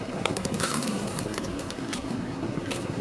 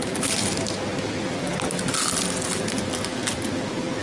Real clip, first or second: second